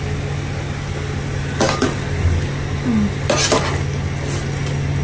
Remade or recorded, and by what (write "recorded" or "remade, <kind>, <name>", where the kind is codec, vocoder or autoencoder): recorded